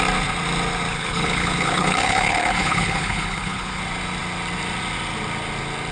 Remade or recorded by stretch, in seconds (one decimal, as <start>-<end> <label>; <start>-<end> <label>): 0.0-0.9 recorded; 0.9-3.8 remade; 3.8-5.9 recorded